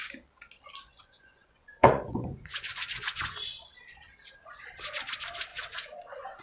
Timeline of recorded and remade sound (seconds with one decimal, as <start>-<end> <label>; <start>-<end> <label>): 0.0-0.9 recorded; 0.9-3.6 remade; 3.6-5.5 recorded; 5.5-6.4 remade